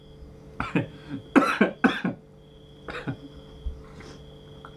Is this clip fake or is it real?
real